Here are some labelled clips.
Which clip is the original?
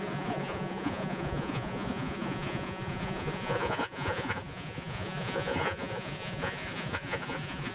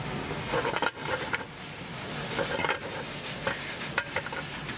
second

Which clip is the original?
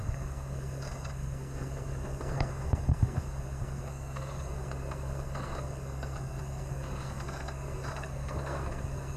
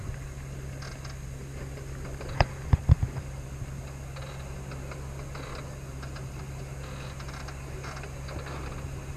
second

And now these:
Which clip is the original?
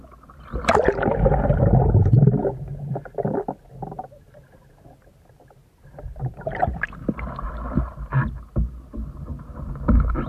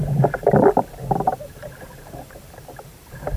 first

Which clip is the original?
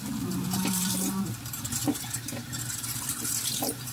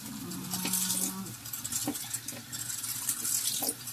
second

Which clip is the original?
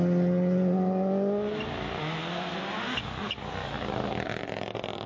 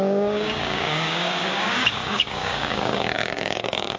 first